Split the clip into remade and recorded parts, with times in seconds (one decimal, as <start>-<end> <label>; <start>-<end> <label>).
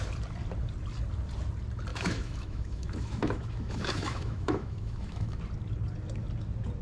0.0-1.9 recorded; 1.9-5.4 remade; 5.4-6.8 recorded